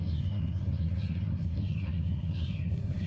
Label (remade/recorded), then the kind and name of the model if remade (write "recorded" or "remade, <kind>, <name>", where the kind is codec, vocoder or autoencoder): remade, codec, SNAC